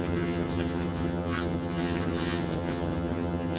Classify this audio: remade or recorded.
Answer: remade